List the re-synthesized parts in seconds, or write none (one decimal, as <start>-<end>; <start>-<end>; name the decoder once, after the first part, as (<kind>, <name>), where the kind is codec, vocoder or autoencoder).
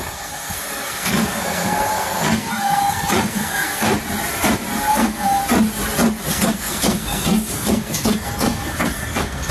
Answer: 0.0-3.9 (codec, SNAC); 4.9-5.4; 6.3-9.5